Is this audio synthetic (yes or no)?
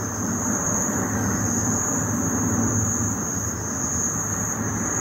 yes